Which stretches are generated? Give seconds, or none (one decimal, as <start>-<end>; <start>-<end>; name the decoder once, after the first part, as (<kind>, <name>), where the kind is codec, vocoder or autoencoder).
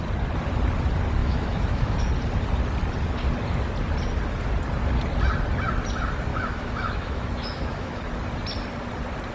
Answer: 1.2-2.0 (autoencoder, DAC-VAE); 6.3-8.0